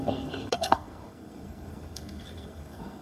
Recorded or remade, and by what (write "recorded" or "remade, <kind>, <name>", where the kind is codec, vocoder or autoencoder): remade, codec, SNAC